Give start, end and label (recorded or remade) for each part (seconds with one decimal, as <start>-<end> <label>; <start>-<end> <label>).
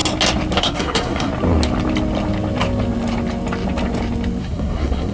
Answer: 0.0-0.6 recorded; 0.6-1.3 remade; 1.3-4.4 recorded; 4.4-5.1 remade